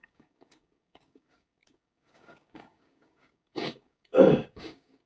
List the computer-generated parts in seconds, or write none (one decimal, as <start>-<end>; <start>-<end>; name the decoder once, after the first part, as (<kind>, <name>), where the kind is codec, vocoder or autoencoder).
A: 0.0-5.1 (codec, DAC)